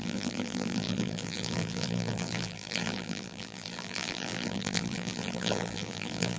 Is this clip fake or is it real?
fake